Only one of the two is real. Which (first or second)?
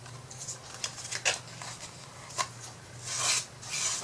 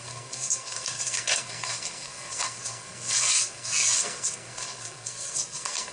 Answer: first